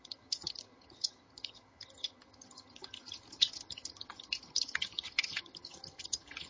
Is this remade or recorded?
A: remade